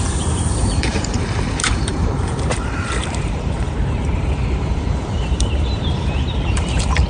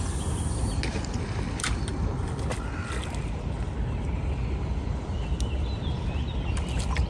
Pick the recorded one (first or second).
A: second